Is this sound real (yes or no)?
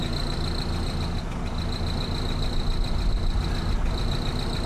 yes